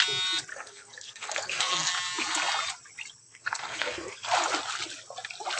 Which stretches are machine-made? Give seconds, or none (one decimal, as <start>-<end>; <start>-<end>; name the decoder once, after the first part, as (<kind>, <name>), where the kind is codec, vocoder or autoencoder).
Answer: 0.5-1.9 (codec, SNAC); 3.2-4.3